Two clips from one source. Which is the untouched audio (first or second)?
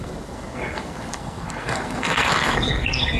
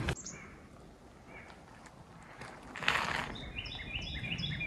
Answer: second